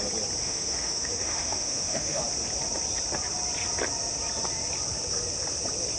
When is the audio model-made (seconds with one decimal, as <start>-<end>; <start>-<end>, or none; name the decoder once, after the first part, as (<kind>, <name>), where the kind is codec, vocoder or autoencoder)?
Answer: 0.4-2.2 (autoencoder, DAC-VAE)